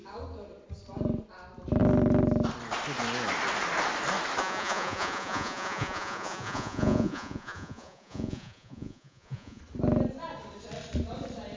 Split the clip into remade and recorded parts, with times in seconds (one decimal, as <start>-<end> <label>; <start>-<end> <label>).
0.0-4.4 recorded; 4.4-9.6 remade; 9.6-11.6 recorded